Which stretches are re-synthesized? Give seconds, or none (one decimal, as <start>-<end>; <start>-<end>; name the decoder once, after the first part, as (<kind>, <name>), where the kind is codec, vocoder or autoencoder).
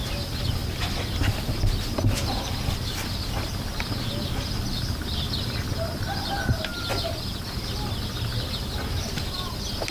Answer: none